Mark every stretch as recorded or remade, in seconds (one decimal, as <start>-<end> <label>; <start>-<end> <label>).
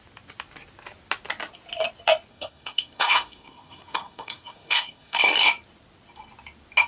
0.0-2.3 recorded; 2.3-5.2 remade; 5.2-6.9 recorded